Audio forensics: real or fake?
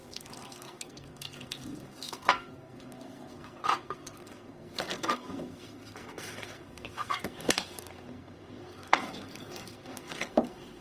fake